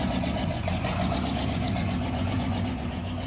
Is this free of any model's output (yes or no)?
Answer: no